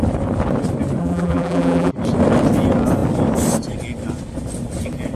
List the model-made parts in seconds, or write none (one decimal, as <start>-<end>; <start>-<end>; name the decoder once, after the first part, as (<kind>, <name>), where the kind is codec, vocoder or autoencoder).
1.0-1.9 (vocoder, BigVGAN v2)